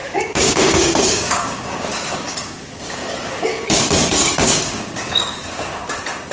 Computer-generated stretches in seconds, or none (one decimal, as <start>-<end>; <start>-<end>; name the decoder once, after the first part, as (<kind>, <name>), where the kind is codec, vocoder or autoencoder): 0.0-3.8 (codec, DAC); 4.2-6.3